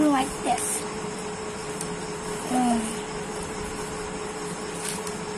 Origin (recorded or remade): recorded